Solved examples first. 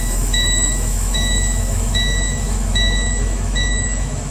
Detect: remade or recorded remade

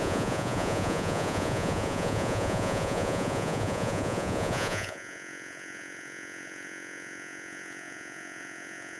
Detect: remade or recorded remade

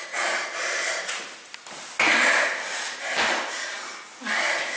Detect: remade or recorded recorded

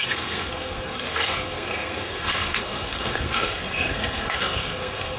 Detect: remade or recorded remade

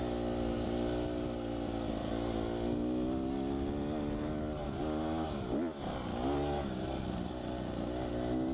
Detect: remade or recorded recorded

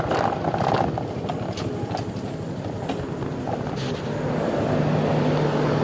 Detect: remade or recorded recorded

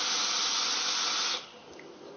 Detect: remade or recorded recorded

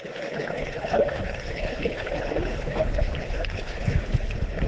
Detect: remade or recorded remade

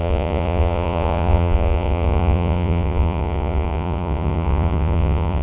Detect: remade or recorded remade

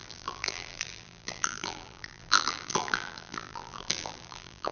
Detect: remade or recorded remade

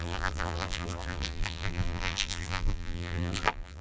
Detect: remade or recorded remade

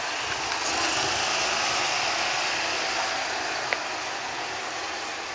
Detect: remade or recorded recorded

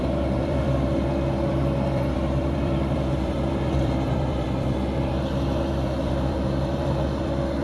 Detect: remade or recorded remade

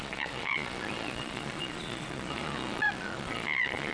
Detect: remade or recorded remade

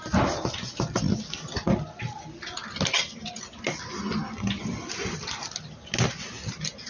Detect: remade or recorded recorded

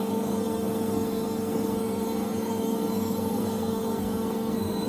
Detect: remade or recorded remade